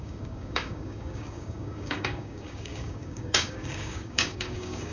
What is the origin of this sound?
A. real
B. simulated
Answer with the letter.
B